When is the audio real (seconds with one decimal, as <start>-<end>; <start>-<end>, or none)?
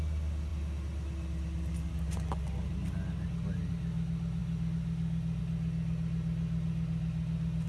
0.0-7.7